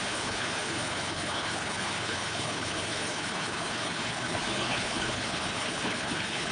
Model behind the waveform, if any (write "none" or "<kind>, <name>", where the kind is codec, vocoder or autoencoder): codec, HILCodec